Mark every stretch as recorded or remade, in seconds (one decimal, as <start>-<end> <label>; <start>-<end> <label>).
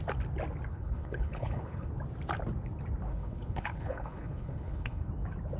0.0-0.7 recorded; 0.7-1.9 remade; 1.9-3.1 recorded; 3.1-5.1 remade; 5.1-5.6 recorded